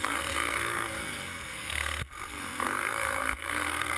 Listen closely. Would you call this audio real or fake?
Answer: fake